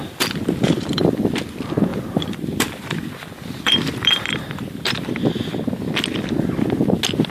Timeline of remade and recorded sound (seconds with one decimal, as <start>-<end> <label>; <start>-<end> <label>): 0.0-1.3 remade; 1.3-1.9 recorded; 1.9-4.9 remade; 4.9-7.3 recorded